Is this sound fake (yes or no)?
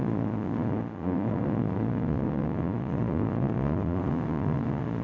yes